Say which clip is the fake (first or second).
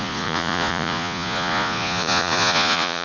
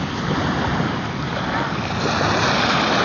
first